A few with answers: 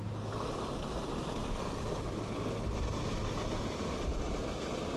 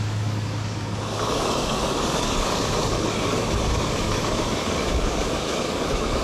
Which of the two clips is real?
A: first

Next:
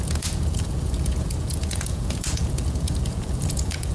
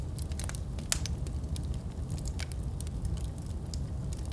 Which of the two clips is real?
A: second